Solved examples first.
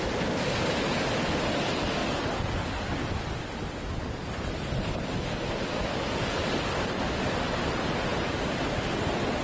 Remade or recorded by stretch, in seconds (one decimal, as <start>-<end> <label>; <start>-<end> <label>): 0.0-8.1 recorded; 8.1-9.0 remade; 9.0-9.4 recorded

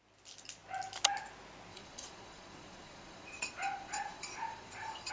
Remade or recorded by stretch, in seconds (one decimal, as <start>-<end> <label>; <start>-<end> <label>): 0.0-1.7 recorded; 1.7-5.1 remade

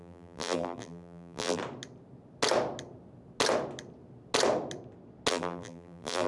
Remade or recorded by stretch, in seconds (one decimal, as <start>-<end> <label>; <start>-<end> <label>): 0.0-1.6 remade; 1.6-5.3 recorded; 5.3-6.3 remade

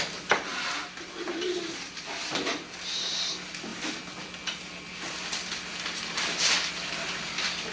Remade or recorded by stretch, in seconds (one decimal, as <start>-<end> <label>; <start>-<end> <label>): 0.0-7.7 recorded

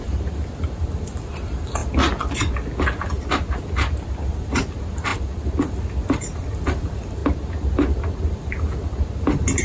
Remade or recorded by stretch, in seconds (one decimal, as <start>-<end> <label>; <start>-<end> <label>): 0.0-1.8 remade; 1.8-4.2 recorded; 4.2-7.2 remade; 7.2-9.6 recorded